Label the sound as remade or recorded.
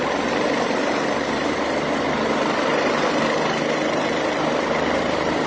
recorded